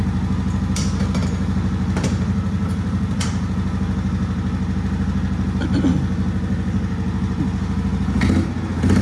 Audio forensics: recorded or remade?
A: recorded